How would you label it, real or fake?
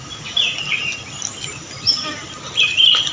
real